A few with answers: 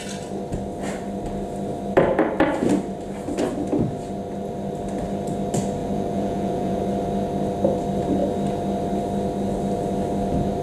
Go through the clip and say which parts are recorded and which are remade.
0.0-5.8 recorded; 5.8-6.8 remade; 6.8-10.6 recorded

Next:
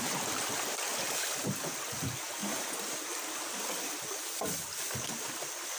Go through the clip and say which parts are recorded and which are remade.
0.0-5.8 recorded

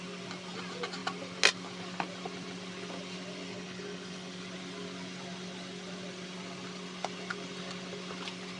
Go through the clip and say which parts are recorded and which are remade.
0.0-3.5 recorded; 3.5-4.3 remade; 4.3-8.6 recorded

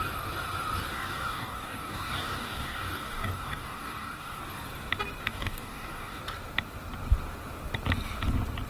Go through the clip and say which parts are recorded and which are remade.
0.0-0.9 recorded; 0.9-4.4 remade; 4.4-5.2 recorded; 5.2-6.2 remade; 6.2-8.7 recorded

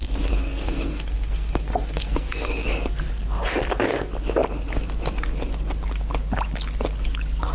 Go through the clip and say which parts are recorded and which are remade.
0.0-2.7 remade; 2.7-7.5 recorded

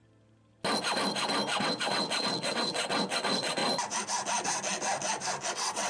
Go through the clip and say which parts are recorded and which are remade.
0.0-1.6 recorded; 1.6-3.6 remade; 3.6-5.5 recorded; 5.5-5.9 remade